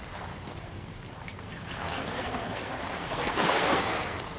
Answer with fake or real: fake